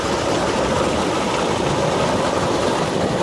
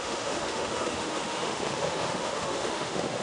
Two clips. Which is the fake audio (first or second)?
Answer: second